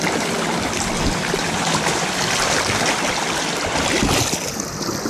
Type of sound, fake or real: real